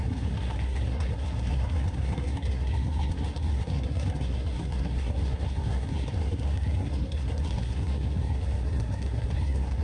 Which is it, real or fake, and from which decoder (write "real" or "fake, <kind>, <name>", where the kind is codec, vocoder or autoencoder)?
fake, codec, SNAC